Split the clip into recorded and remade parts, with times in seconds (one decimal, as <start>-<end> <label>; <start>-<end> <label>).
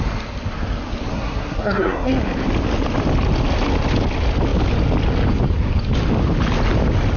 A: 0.0-1.1 recorded; 1.1-2.1 remade; 2.1-7.2 recorded